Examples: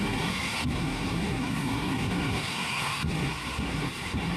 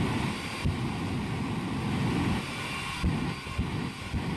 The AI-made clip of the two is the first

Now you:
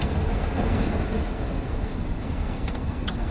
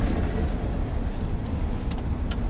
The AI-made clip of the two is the first